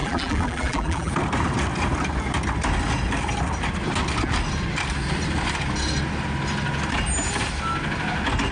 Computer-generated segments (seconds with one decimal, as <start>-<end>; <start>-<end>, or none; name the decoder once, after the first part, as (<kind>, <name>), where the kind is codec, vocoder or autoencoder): 0.0-1.1 (vocoder, BigVGAN v2)